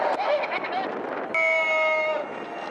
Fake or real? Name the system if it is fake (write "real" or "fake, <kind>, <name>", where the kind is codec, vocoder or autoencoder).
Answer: real